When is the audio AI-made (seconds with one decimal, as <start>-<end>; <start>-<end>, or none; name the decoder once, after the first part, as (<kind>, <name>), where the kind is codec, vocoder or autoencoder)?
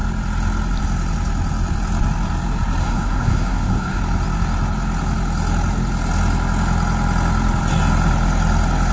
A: 2.8-4.0 (codec, SNAC)